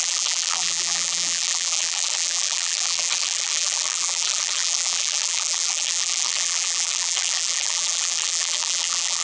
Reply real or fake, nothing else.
fake